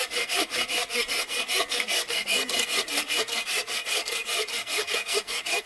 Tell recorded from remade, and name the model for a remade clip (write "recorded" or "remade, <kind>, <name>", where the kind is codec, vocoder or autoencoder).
remade, codec, SNAC